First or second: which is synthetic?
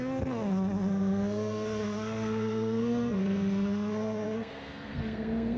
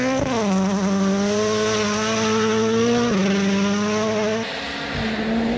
first